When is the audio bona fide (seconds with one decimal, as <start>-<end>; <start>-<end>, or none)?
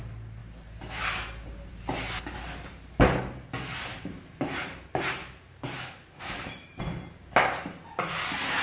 0.0-3.9; 4.4-5.2; 6.8-8.6